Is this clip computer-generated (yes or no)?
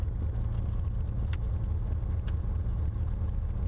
no